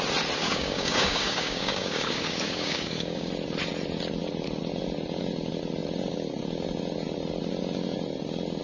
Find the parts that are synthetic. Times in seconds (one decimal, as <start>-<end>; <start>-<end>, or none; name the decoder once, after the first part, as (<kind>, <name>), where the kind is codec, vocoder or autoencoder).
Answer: 0.4-3.3 (codec, DAC)